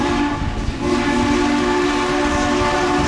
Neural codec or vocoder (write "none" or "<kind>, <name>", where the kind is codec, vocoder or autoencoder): none